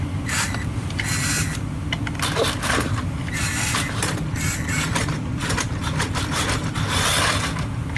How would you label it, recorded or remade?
recorded